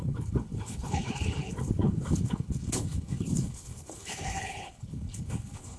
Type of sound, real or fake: fake